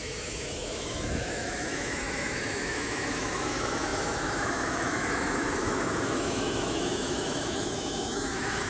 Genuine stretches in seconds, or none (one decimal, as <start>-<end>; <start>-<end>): none